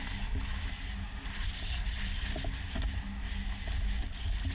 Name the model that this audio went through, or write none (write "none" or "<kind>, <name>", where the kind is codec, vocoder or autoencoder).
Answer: none